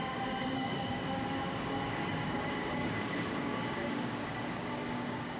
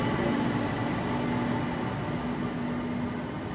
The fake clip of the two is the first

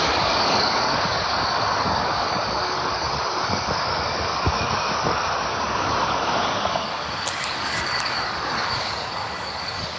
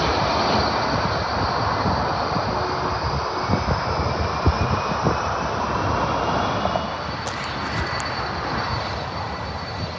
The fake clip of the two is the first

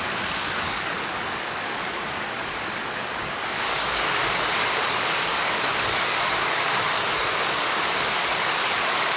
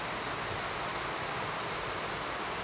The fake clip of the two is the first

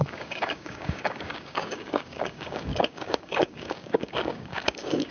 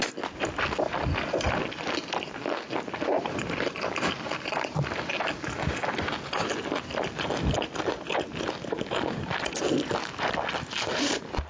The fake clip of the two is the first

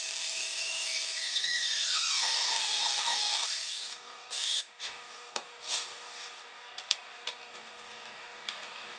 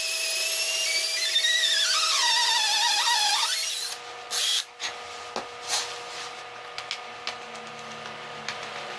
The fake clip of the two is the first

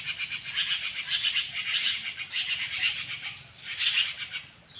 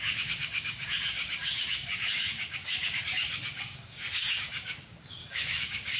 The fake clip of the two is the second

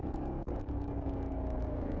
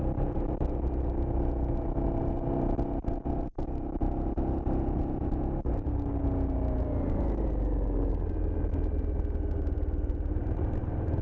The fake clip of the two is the first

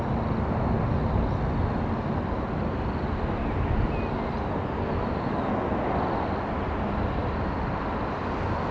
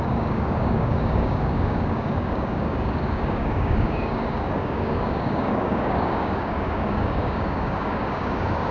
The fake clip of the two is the second